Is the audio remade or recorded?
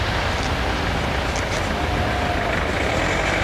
recorded